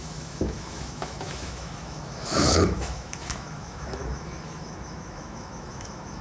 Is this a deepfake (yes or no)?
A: yes